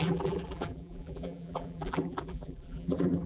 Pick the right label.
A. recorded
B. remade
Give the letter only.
B